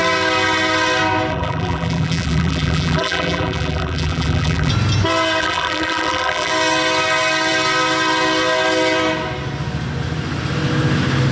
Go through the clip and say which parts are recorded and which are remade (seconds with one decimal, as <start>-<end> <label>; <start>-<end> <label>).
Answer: 0.0-1.3 recorded; 1.3-4.7 remade; 4.7-5.4 recorded; 5.4-6.5 remade; 6.5-11.3 recorded